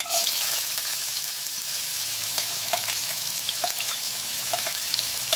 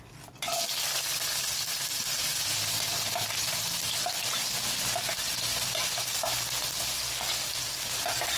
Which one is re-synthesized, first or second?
first